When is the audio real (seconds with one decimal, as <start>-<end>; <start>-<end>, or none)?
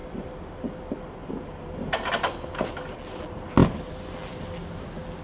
0.0-5.2